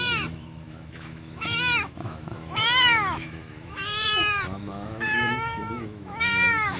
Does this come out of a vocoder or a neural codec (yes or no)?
yes